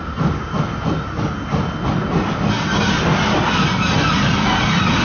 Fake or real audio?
real